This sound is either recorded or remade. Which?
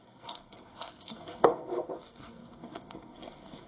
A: remade